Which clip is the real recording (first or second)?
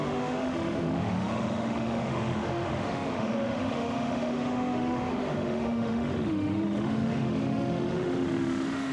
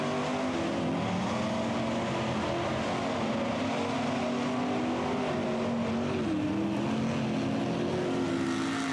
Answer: second